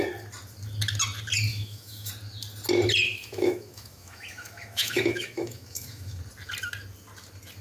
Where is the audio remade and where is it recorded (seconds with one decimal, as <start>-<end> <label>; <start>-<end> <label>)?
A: 0.0-1.5 recorded; 1.5-2.1 remade; 2.1-3.1 recorded; 3.1-6.2 remade; 6.2-7.6 recorded